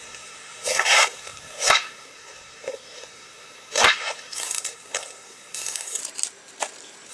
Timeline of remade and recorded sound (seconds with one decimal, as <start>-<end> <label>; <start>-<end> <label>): 0.0-6.0 remade; 6.0-7.1 recorded